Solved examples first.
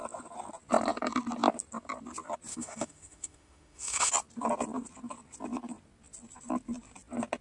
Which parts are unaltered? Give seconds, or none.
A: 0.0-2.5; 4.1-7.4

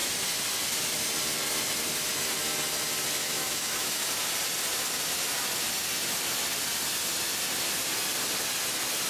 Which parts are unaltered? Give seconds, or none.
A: 0.0-3.2; 4.0-9.1

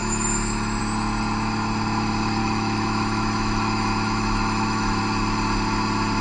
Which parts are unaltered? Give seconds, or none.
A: 0.8-2.4; 5.0-6.2

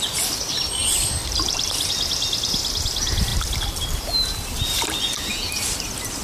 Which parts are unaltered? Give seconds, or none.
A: 0.0-6.2